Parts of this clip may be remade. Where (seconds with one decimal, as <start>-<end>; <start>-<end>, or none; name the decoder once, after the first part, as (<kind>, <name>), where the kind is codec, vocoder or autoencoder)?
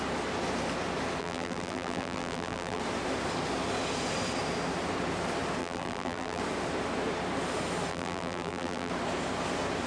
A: 1.2-2.8 (vocoder, BigVGAN v2); 5.6-6.4; 7.9-8.9